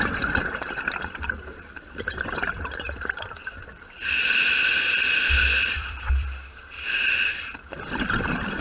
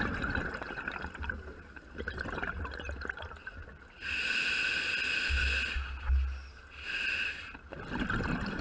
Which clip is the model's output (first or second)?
first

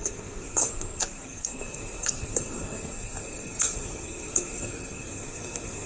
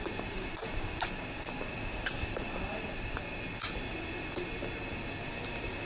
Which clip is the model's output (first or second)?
first